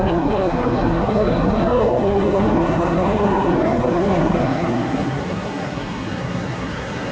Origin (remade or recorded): remade